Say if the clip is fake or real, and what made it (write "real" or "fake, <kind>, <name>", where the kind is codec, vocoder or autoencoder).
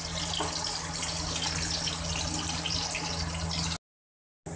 real